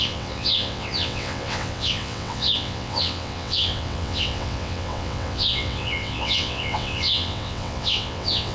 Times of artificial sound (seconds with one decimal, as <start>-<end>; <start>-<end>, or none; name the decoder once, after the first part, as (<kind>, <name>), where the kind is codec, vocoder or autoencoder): 0.0-8.5 (vocoder, WaveNeXt)